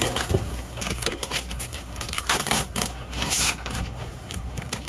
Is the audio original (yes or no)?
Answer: no